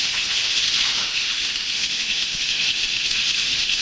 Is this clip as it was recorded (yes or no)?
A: no